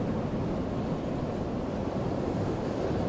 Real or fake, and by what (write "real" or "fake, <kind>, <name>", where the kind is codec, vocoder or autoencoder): real